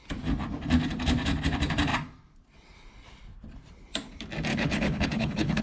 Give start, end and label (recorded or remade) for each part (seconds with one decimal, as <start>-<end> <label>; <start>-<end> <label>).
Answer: 0.0-4.5 recorded; 4.5-5.6 remade